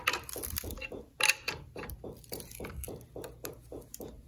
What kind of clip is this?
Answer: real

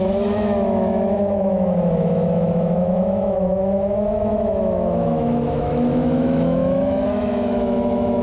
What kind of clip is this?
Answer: fake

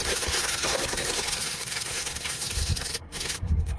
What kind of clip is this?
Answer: fake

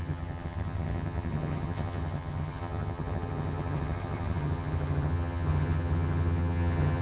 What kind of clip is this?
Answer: fake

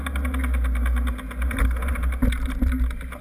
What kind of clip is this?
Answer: real